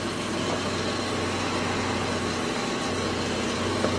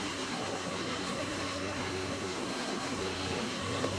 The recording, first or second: first